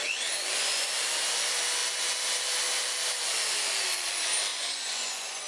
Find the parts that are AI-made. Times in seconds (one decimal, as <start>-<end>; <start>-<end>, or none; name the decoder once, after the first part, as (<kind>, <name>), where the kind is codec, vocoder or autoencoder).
0.0-0.9 (vocoder, Vocos); 4.5-5.5

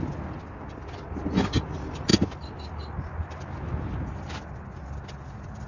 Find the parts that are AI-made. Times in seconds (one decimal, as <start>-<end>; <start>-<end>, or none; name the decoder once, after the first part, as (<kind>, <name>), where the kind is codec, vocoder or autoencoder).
none

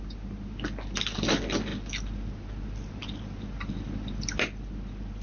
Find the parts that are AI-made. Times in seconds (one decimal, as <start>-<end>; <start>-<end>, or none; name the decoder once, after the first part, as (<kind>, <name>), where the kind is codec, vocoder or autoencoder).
none

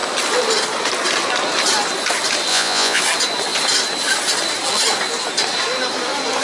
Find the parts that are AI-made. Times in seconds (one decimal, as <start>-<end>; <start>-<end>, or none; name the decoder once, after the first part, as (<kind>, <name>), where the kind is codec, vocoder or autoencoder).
2.5-3.0 (vocoder, Vocos)